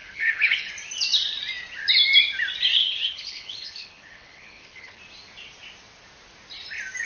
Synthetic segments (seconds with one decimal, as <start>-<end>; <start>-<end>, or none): 0.0-0.7; 2.8-5.0